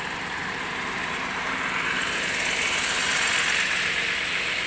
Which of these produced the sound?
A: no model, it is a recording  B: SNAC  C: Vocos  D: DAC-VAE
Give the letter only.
A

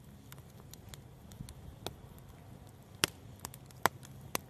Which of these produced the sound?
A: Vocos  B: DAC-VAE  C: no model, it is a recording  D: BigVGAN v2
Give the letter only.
C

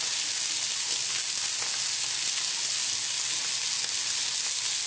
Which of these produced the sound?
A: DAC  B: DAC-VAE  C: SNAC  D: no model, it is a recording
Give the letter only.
D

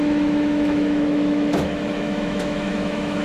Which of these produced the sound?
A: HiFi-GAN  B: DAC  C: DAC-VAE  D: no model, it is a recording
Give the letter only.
C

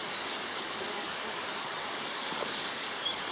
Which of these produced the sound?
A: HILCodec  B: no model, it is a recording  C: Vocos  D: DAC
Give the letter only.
D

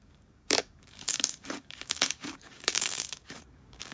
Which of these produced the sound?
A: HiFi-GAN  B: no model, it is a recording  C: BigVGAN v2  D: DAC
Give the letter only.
D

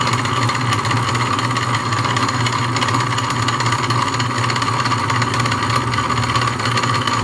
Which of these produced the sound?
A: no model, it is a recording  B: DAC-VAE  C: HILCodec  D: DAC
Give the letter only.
A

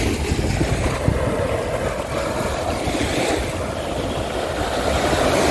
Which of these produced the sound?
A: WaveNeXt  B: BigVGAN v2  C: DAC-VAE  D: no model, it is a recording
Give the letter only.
D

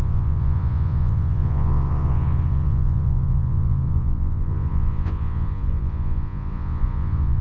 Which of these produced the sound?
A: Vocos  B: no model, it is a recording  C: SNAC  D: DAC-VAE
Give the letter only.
A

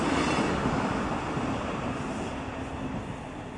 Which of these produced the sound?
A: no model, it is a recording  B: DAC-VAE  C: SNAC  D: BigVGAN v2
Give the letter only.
A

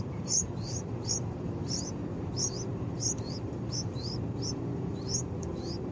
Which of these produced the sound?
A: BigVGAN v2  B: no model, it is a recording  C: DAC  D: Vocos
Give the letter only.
A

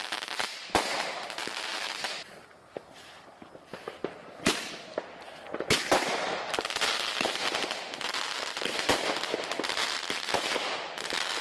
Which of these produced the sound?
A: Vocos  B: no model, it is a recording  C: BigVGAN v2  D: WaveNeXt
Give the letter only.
B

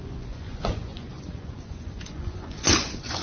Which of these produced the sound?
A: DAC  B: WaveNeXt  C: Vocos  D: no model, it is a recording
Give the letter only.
C